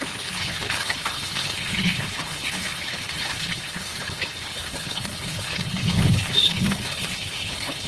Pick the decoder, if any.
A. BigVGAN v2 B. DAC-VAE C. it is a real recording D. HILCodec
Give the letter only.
D